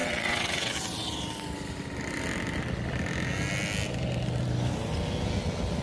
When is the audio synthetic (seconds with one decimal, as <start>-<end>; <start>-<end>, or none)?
0.0-0.7